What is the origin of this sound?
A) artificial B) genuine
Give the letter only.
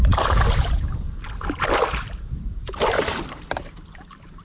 B